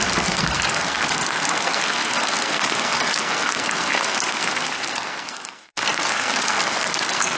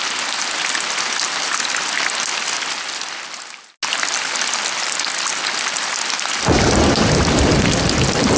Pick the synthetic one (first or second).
first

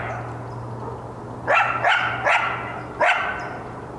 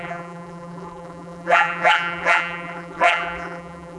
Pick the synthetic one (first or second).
second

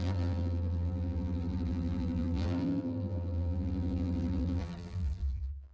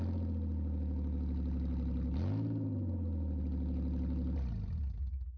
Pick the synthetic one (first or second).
first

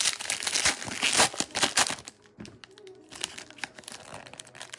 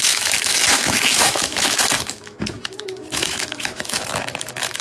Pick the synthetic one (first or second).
second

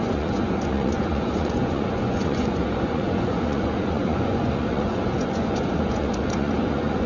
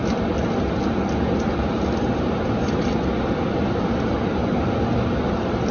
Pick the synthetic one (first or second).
first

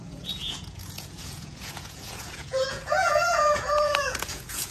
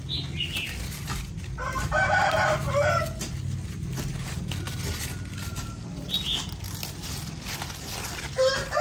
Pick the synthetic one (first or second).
first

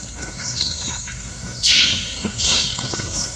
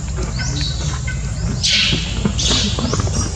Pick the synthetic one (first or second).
first